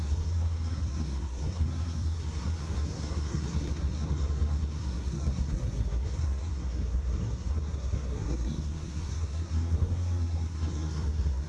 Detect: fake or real fake